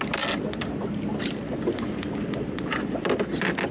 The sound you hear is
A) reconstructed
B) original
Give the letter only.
B